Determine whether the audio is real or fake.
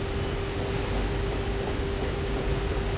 real